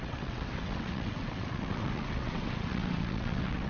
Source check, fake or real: fake